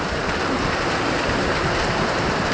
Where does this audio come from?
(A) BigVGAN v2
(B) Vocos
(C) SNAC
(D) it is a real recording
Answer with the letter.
A